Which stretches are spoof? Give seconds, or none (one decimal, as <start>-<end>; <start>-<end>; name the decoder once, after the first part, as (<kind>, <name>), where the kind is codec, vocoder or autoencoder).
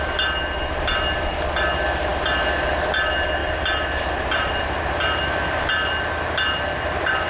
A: none